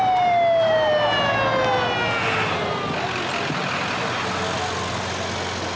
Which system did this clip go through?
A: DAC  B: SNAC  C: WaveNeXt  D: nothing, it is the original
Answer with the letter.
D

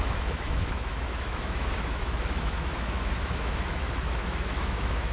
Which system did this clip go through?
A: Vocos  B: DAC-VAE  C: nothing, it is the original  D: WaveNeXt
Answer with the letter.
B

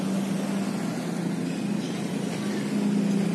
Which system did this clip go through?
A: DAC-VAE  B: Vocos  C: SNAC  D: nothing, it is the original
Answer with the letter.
D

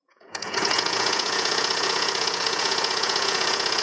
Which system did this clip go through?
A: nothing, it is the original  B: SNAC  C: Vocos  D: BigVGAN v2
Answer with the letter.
C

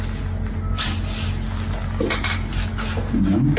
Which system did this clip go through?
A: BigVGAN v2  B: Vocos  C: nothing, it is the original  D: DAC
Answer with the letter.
C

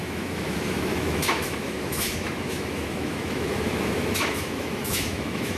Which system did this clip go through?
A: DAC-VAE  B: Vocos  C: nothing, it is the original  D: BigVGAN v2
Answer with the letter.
A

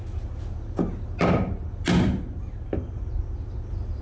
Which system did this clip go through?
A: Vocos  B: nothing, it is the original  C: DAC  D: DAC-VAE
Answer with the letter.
B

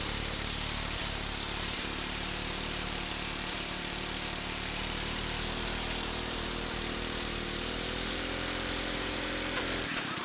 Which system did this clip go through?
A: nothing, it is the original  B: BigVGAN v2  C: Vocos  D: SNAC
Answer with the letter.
B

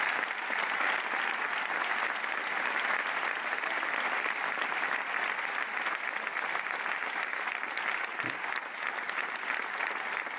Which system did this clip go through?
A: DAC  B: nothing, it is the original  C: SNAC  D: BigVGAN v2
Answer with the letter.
B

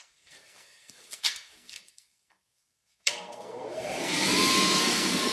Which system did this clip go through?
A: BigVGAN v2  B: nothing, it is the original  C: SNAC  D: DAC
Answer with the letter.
C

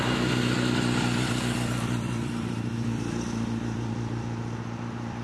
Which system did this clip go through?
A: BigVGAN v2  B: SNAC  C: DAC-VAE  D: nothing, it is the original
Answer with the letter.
D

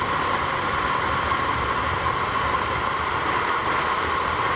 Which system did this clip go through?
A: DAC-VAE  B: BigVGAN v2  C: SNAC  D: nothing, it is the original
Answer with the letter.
B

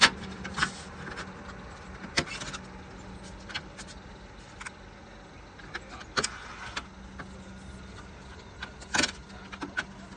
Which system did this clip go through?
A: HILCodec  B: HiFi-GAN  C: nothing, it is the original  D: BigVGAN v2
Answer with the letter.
C